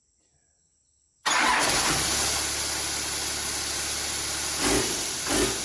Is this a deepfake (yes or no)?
no